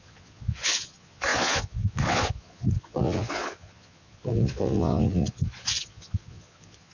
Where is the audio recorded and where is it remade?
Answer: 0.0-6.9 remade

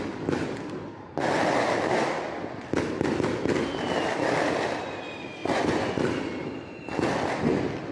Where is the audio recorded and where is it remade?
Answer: 0.0-5.4 recorded; 5.4-6.0 remade; 6.0-7.9 recorded

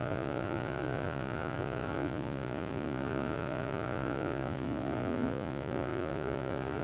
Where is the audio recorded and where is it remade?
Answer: 0.0-6.8 remade

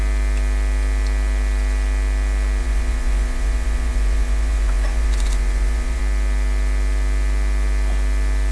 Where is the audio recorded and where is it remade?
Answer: 0.0-2.6 recorded; 2.6-6.0 remade; 6.0-8.5 recorded

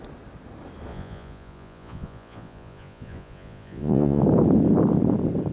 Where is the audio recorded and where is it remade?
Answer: 0.0-0.9 recorded; 0.9-4.2 remade; 4.2-5.5 recorded

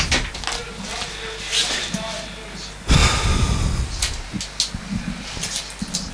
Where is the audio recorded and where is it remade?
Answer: 0.0-6.1 recorded

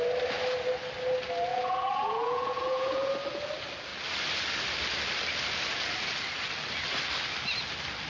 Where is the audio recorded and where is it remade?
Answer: 0.0-1.5 recorded; 1.5-3.1 remade; 3.1-8.1 recorded

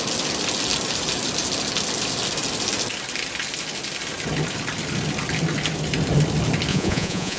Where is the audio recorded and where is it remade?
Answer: 0.0-6.7 recorded; 6.7-7.4 remade